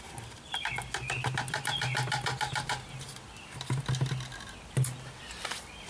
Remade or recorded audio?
recorded